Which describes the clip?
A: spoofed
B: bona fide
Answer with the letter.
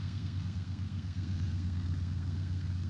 A